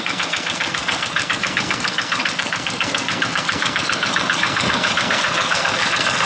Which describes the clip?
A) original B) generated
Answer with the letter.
B